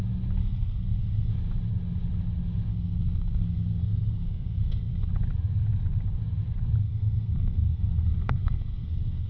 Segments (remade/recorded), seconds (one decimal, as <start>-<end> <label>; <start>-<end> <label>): 0.0-0.4 recorded; 0.4-1.3 remade; 1.3-2.7 recorded; 2.7-5.1 remade; 5.1-6.8 recorded; 6.8-9.3 remade